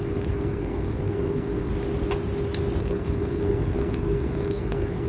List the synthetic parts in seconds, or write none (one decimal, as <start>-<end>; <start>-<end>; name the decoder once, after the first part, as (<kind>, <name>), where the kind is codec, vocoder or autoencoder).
0.0-1.7 (codec, SNAC); 2.8-5.1